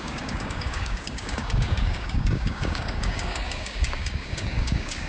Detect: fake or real fake